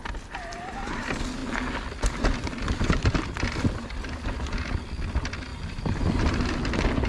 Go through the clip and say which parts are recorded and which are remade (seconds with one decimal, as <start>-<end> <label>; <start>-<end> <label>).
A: 0.0-5.5 recorded; 5.5-6.3 remade; 6.3-7.1 recorded

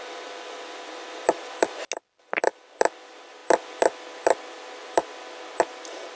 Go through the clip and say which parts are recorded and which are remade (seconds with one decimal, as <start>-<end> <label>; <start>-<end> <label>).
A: 0.0-6.2 recorded

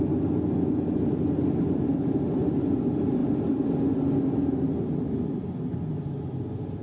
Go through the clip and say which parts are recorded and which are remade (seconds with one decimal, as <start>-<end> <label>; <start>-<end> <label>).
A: 0.0-6.8 recorded

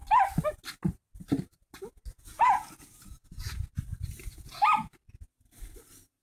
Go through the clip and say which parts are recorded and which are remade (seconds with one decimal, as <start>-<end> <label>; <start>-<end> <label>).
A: 0.0-2.1 recorded; 2.1-3.7 remade; 3.7-4.3 recorded; 4.3-5.0 remade; 5.0-6.2 recorded

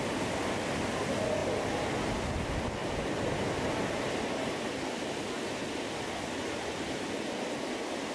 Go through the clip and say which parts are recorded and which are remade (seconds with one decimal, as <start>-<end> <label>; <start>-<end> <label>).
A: 0.0-8.1 recorded

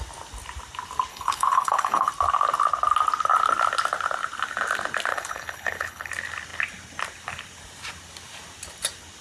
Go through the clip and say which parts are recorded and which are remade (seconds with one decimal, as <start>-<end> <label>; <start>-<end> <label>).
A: 0.0-1.1 recorded; 1.1-2.1 remade; 2.1-5.1 recorded; 5.1-6.1 remade; 6.1-9.2 recorded